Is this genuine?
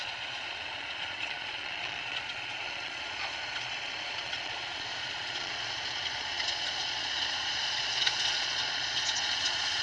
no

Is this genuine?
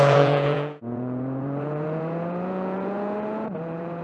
no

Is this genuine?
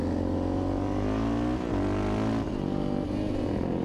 yes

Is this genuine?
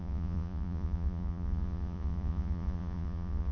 no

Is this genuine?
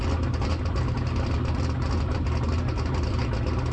yes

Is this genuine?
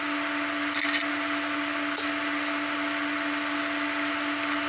yes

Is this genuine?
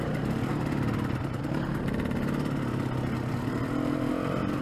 yes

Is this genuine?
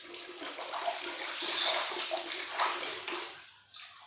yes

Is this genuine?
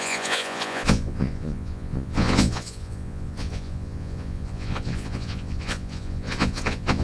no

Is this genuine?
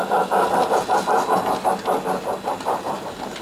yes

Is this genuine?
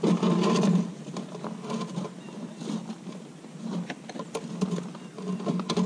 yes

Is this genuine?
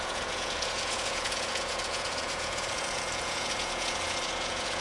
no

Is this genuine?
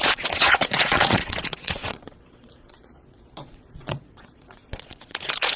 no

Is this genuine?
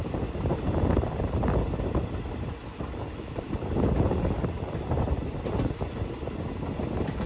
yes